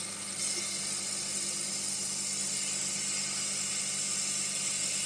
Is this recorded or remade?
recorded